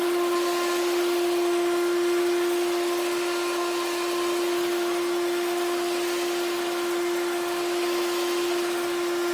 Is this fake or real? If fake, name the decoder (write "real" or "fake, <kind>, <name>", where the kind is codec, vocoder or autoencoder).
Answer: real